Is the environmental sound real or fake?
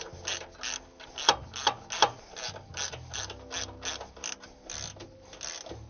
real